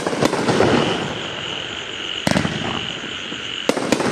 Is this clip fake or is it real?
real